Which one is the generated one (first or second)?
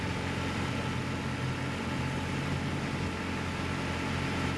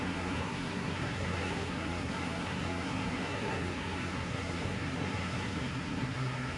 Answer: second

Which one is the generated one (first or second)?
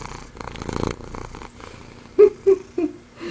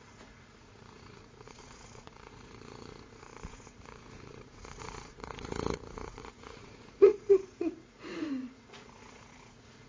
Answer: second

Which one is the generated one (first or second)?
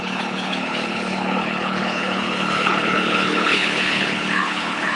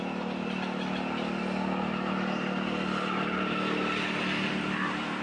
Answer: first